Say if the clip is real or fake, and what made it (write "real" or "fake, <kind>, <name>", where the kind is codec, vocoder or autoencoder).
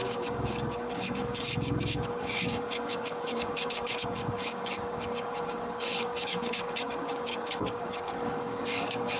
fake, codec, DAC